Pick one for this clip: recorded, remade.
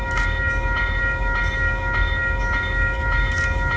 remade